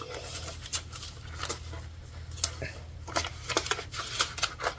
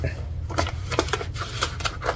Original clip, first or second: first